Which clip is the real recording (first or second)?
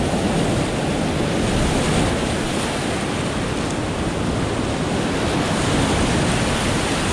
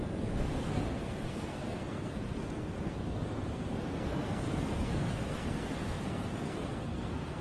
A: first